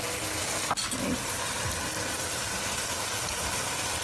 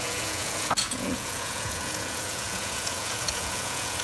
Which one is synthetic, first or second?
second